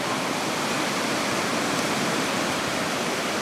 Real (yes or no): no